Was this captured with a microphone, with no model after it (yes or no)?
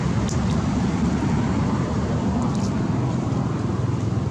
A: yes